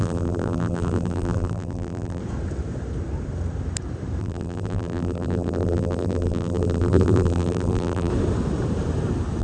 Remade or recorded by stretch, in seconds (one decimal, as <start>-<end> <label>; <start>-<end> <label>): 0.0-2.2 remade; 2.2-4.2 recorded; 4.2-8.1 remade; 8.1-9.4 recorded